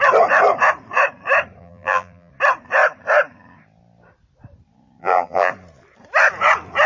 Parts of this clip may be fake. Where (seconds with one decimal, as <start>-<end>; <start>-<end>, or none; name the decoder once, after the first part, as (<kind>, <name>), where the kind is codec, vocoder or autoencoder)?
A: 1.6-2.3 (vocoder, BigVGAN v2); 5.0-5.5